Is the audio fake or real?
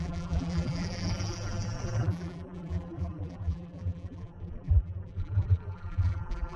fake